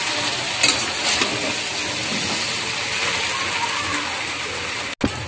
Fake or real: real